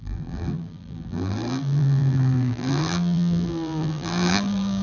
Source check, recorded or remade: remade